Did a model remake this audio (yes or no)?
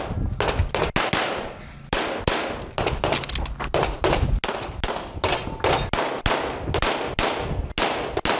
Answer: no